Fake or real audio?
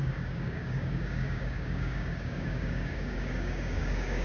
fake